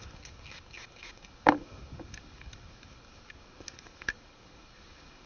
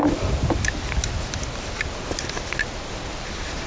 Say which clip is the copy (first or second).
first